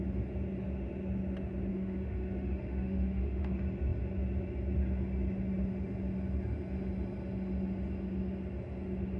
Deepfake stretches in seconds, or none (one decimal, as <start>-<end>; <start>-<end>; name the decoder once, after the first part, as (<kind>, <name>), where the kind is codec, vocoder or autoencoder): 1.7-3.5 (autoencoder, DAC-VAE)